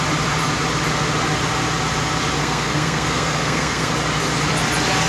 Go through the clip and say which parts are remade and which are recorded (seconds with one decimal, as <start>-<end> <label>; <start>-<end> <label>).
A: 0.0-2.4 recorded; 2.4-3.9 remade; 3.9-5.1 recorded